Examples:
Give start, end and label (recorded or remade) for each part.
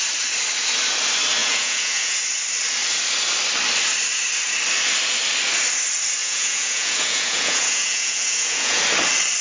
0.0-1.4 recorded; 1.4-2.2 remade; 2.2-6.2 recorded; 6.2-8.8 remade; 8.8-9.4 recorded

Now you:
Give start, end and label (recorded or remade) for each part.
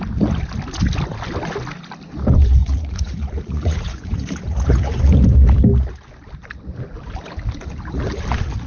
0.0-2.6 recorded; 2.6-5.0 remade; 5.0-8.7 recorded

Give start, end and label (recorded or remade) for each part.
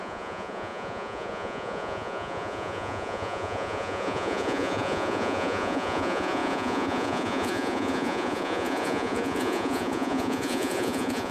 0.0-11.3 remade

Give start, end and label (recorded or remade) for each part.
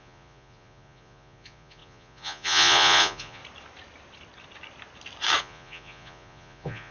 0.0-3.4 remade; 3.4-5.4 recorded; 5.4-6.9 remade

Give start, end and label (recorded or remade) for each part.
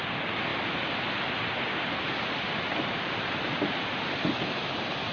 0.0-5.1 recorded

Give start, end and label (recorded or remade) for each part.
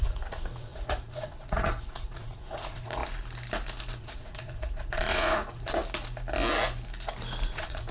0.0-3.0 remade; 3.0-4.0 recorded; 4.0-5.8 remade; 5.8-7.5 recorded; 7.5-7.9 remade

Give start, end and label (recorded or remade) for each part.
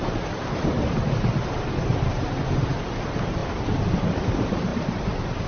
0.0-5.5 recorded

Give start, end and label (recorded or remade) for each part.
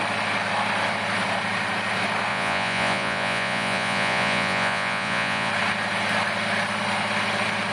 0.0-2.3 recorded; 2.3-5.5 remade; 5.5-7.7 recorded